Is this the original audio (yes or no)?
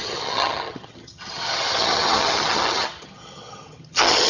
no